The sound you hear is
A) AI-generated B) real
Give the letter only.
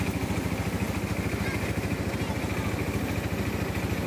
B